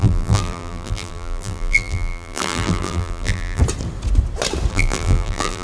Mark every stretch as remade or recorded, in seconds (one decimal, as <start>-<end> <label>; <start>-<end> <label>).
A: 0.0-3.6 remade; 3.6-4.7 recorded; 4.7-5.6 remade